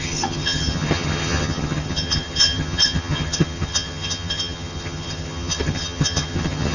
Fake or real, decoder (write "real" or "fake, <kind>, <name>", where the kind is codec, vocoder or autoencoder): fake, vocoder, HiFi-GAN